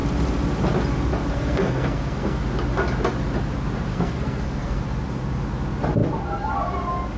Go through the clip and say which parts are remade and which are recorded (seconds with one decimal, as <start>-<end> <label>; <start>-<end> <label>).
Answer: 0.0-1.3 recorded; 1.3-2.4 remade; 2.4-3.9 recorded; 3.9-4.8 remade; 4.8-7.2 recorded